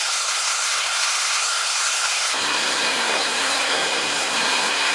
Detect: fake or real fake